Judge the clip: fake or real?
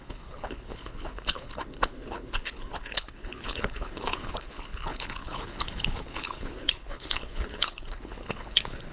fake